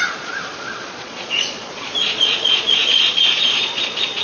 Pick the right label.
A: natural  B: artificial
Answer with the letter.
B